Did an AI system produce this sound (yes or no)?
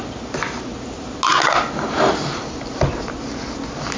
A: no